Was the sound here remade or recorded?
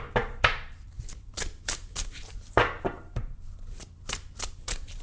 remade